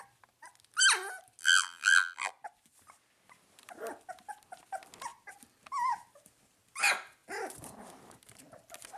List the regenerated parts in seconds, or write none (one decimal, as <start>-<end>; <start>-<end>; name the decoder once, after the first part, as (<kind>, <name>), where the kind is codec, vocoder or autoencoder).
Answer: 1.4-2.3 (vocoder, BigVGAN v2)